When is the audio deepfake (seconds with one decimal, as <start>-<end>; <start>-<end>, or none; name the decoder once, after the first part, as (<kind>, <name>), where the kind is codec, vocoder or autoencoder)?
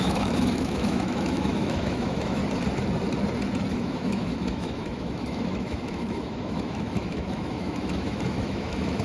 0.0-2.4 (autoencoder, DAC-VAE); 3.7-9.0